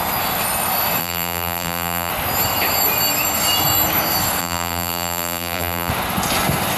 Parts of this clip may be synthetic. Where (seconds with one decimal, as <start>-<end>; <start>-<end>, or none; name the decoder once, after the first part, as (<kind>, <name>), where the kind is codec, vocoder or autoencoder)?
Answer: 1.0-2.1 (vocoder, BigVGAN v2); 4.4-5.9